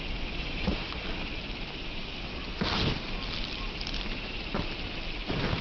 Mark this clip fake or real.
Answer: real